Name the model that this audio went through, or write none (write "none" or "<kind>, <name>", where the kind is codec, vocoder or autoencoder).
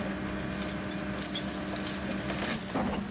none